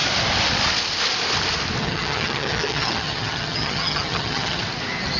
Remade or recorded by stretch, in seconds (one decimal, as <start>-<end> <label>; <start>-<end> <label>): 0.0-1.8 recorded; 1.8-4.6 remade; 4.6-5.2 recorded